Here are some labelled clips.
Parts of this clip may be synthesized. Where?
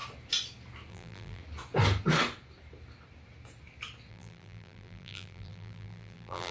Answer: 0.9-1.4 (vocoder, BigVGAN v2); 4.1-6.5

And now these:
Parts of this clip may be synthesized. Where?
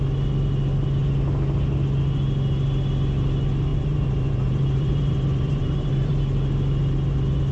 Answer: 3.7-6.1 (vocoder, BigVGAN v2)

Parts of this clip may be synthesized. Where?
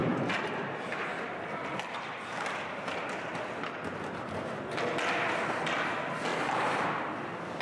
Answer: 6.3-7.1 (vocoder, BigVGAN v2)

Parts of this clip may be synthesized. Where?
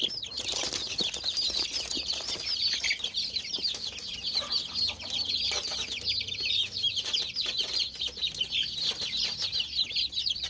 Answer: none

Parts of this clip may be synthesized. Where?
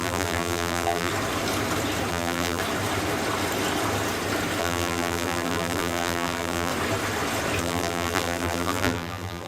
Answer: 0.0-1.1 (vocoder, BigVGAN v2); 2.1-2.6; 4.6-6.7; 7.6-9.5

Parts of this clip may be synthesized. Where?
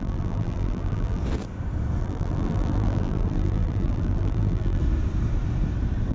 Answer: 0.0-1.2 (vocoder, BigVGAN v2); 2.0-4.8